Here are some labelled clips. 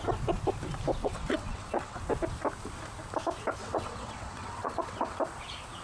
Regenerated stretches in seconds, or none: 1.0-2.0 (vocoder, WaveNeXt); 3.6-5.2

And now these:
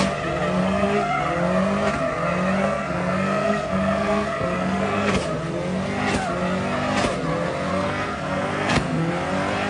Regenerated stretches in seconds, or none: 0.6-1.2 (codec, SNAC); 2.6-5.1; 7.7-9.1